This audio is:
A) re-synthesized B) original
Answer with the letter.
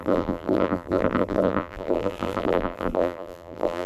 A